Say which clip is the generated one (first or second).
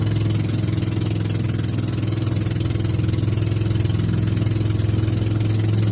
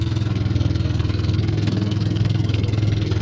second